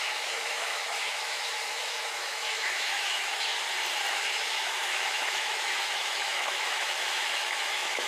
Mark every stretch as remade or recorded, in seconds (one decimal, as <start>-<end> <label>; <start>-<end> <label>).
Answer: 0.0-3.5 remade; 3.5-4.1 recorded; 4.1-8.1 remade